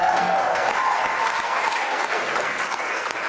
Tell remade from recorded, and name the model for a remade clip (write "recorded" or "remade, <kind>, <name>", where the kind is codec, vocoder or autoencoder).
remade, codec, SNAC